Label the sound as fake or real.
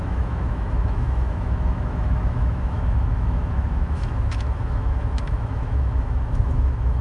fake